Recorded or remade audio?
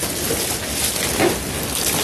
recorded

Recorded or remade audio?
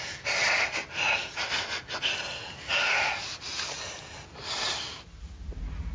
recorded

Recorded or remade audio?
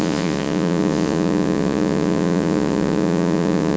remade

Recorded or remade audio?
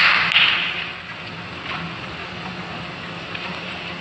recorded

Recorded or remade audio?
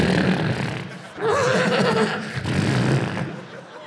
recorded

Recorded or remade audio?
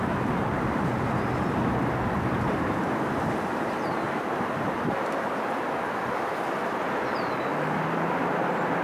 remade